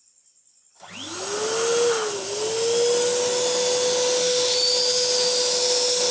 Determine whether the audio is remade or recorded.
recorded